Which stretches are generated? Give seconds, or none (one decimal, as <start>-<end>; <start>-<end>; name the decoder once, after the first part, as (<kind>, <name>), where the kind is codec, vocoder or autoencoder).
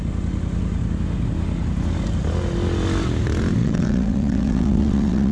3.6-5.3 (vocoder, WaveNeXt)